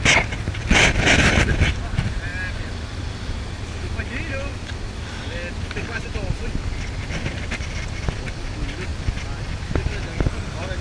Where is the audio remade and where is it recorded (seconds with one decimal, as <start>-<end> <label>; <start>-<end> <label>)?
0.0-10.8 recorded